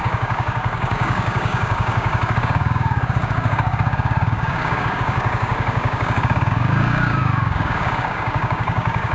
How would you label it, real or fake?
fake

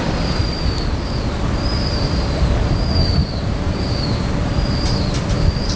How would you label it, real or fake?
fake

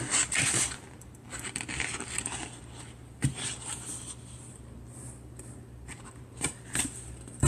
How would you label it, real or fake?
fake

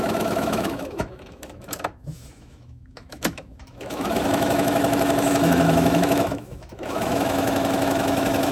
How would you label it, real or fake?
fake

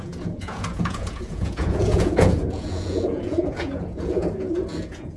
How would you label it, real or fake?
fake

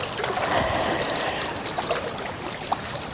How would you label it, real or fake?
real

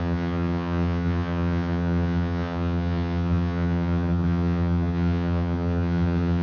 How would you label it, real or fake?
fake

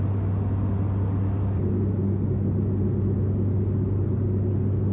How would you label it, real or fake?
real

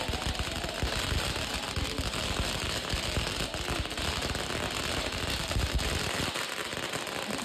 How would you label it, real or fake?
real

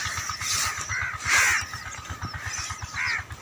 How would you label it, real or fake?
real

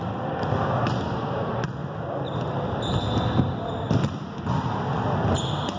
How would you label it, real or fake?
real